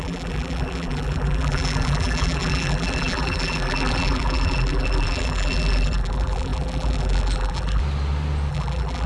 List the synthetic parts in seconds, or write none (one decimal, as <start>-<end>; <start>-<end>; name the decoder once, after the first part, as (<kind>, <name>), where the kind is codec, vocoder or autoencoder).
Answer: 0.0-7.8 (vocoder, BigVGAN v2); 8.5-9.1